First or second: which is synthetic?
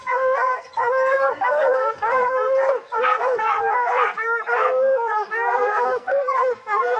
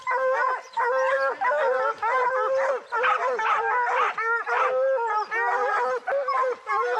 first